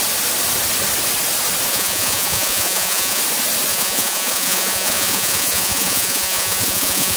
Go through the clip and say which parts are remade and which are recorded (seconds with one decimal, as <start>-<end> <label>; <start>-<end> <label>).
0.0-1.7 recorded; 1.7-3.2 remade; 3.2-3.7 recorded; 3.7-7.2 remade